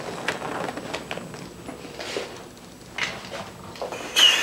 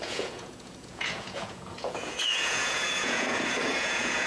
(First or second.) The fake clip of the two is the second